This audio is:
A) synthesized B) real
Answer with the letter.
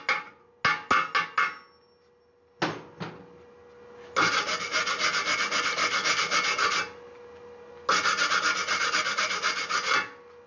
B